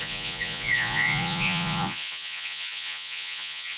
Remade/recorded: remade